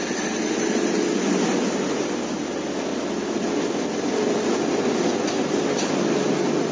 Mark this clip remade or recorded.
recorded